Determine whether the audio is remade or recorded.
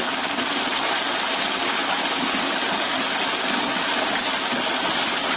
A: recorded